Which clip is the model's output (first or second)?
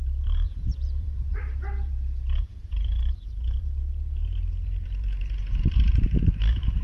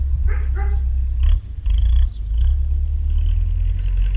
first